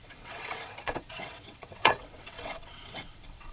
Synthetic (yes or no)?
yes